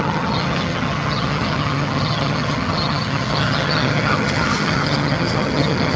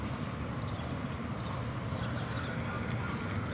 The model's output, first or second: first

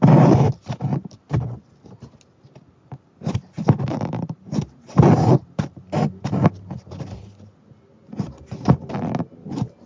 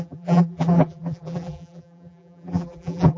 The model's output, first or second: second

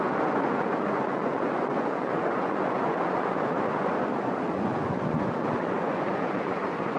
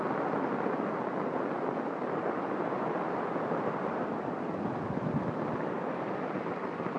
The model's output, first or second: first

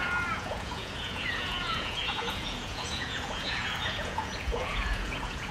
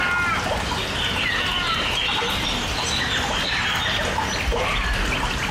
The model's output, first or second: first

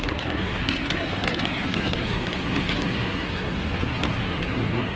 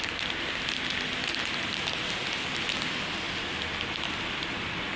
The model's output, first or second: first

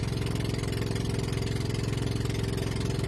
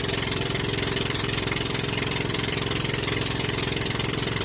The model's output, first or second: second